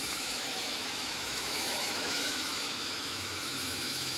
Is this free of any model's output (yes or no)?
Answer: no